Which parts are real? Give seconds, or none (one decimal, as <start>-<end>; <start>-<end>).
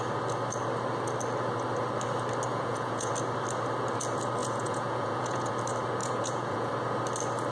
0.0-2.5; 3.1-4.4; 5.5-6.0; 6.7-7.5